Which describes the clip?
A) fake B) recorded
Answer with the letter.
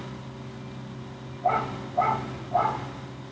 B